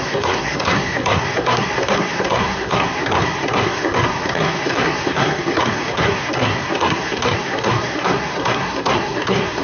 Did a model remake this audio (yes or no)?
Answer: yes